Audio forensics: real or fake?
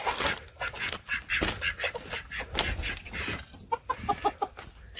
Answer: real